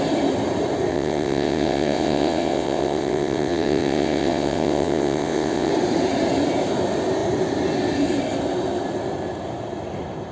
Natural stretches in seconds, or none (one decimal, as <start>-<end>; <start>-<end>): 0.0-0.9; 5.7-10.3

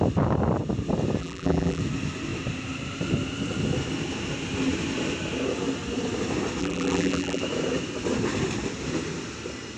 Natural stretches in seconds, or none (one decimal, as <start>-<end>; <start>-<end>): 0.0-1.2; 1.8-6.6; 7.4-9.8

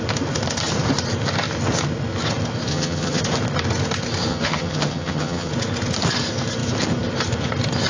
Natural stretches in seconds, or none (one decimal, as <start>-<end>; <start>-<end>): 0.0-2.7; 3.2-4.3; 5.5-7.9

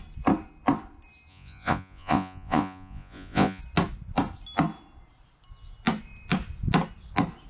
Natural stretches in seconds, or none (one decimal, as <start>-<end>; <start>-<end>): 0.0-1.3; 3.6-7.5

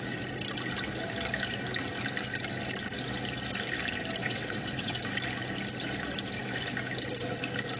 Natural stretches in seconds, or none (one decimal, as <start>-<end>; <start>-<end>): 0.0-4.2; 5.0-7.8